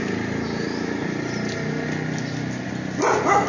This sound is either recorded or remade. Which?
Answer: recorded